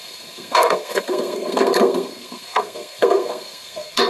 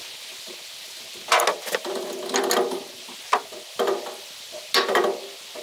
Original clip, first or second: second